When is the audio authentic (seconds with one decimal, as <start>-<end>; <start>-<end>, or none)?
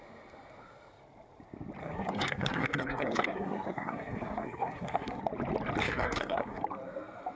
0.0-1.8; 5.2-5.8; 6.6-7.4